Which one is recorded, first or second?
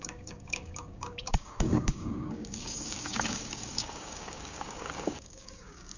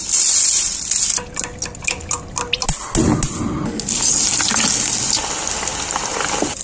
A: second